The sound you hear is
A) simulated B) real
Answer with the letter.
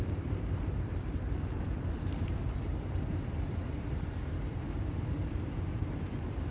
A